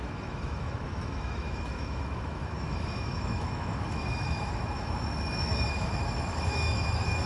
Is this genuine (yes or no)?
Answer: no